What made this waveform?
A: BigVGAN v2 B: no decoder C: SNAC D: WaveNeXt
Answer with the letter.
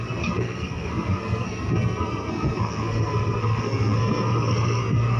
C